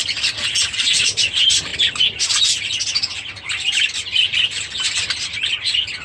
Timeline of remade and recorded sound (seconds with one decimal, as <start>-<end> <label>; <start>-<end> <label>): 0.0-6.0 recorded